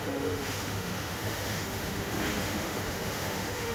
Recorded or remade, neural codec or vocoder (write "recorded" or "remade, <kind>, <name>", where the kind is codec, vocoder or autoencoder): remade, autoencoder, DAC-VAE